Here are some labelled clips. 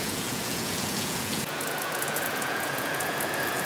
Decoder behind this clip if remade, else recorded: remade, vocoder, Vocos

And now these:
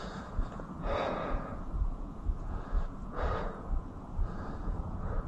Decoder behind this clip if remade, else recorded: remade, vocoder, Vocos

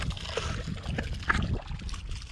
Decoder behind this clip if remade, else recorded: recorded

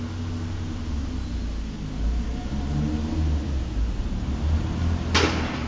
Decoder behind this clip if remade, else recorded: recorded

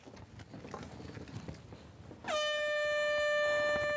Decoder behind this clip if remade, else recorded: recorded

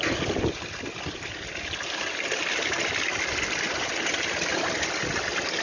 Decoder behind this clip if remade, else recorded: recorded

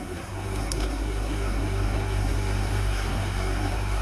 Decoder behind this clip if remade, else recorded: remade, codec, SNAC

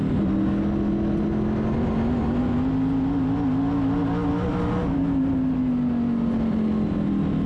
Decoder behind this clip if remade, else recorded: recorded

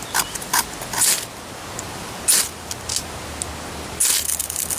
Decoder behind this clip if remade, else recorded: recorded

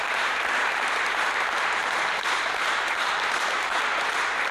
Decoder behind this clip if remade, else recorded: remade, vocoder, BigVGAN v2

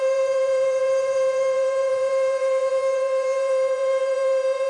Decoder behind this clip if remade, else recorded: remade, vocoder, Vocos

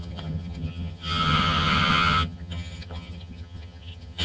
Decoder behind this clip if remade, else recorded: remade, vocoder, HiFi-GAN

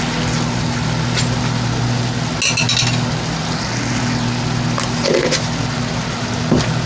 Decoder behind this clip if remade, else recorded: recorded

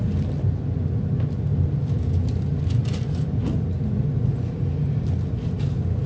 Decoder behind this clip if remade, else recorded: recorded